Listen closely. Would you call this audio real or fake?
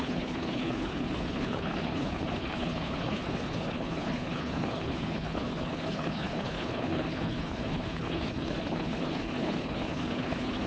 fake